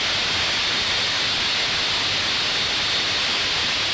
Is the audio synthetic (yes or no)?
no